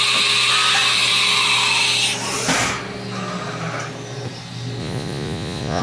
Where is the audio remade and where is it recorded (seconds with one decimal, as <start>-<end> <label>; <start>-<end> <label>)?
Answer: 0.0-4.8 recorded; 4.8-5.8 remade